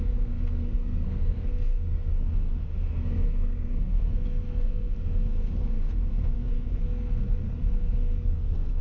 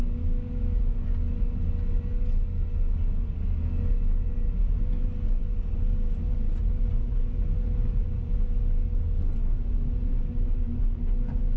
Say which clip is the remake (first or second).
first